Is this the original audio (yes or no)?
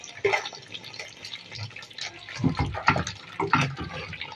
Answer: yes